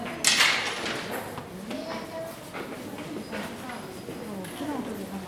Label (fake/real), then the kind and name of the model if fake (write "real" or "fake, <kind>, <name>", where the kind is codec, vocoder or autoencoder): real